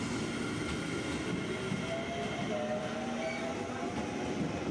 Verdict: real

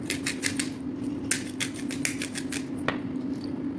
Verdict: real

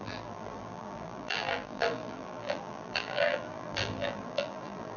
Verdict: fake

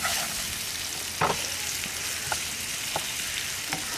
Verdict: real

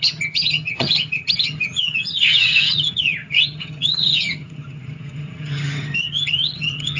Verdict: fake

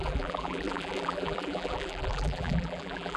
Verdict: fake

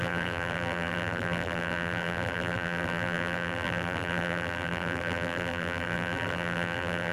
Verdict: fake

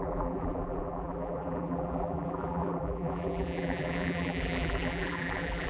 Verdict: fake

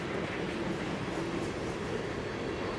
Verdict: real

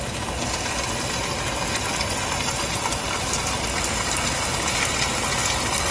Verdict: real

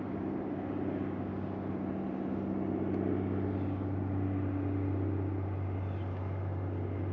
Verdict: real